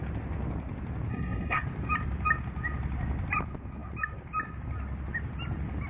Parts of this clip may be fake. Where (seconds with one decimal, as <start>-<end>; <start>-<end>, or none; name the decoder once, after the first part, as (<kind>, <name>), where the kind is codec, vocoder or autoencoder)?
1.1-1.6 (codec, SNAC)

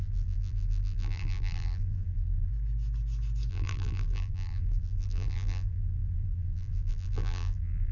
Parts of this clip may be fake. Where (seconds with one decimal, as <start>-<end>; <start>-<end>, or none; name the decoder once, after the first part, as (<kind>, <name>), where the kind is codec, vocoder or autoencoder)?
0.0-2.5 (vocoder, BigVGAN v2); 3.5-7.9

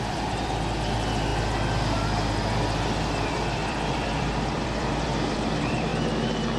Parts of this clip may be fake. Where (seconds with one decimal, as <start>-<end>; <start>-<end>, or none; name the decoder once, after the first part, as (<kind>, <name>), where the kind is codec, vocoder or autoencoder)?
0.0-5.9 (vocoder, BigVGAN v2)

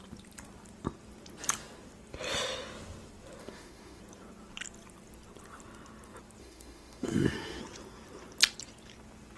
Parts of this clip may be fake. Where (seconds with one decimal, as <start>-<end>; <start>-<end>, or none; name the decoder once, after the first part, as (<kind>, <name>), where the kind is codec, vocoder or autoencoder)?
3.4-4.0 (autoencoder, DAC-VAE); 6.4-7.6

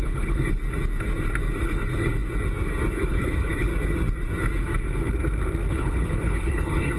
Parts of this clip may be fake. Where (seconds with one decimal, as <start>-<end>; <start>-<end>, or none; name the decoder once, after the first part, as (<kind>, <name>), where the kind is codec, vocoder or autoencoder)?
0.0-0.6 (codec, HILCodec); 1.6-2.2; 2.9-3.7; 5.7-7.0

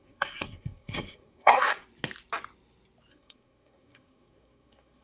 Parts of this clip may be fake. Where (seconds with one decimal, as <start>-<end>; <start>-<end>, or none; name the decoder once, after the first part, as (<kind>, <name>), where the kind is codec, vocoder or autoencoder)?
0.0-1.7 (codec, SNAC); 3.1-5.0